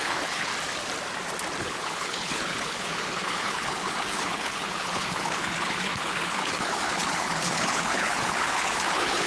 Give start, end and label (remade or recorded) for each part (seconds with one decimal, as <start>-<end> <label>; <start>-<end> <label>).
0.0-0.5 remade; 0.5-1.6 recorded; 1.6-9.3 remade